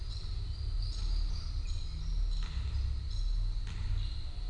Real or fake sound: real